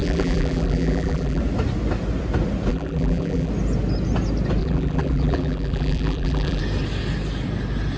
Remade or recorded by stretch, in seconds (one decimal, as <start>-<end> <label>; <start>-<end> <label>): 0.0-1.4 remade; 1.4-2.7 recorded; 2.7-3.5 remade; 3.5-4.6 recorded; 4.6-6.6 remade; 6.6-8.0 recorded